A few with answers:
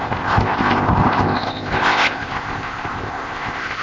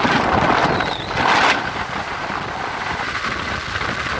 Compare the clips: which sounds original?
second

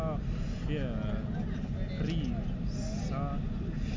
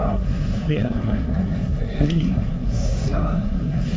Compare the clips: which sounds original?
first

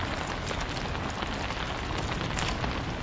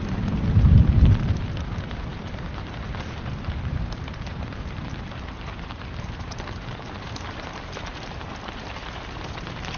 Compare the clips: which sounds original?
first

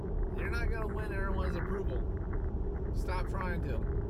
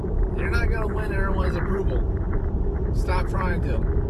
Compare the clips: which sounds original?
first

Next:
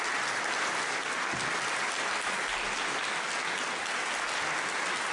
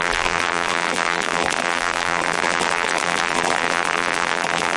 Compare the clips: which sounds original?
first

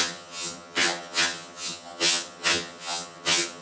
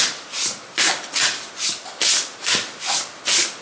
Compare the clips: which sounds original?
second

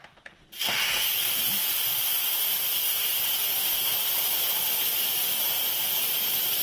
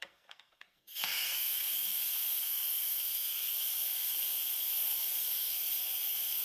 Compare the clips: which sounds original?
first